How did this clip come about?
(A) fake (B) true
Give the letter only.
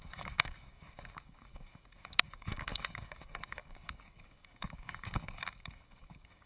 A